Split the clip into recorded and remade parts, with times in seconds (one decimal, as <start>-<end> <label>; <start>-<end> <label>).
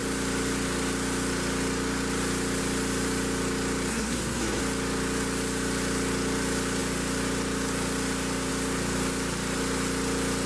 0.0-3.9 recorded; 3.9-4.6 remade; 4.6-10.5 recorded